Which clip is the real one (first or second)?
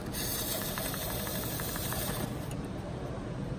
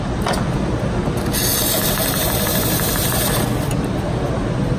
second